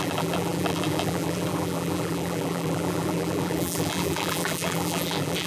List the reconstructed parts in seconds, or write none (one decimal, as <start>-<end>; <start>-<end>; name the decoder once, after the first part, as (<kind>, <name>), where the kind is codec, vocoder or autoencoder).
0.0-5.5 (vocoder, BigVGAN v2)